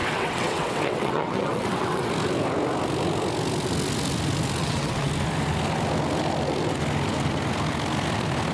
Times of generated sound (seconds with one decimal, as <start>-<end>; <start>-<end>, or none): 0.0-2.1; 4.6-5.1